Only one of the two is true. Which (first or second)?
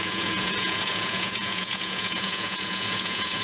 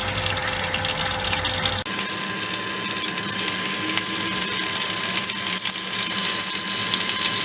second